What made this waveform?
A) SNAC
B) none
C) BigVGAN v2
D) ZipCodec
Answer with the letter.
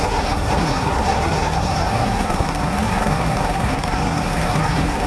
A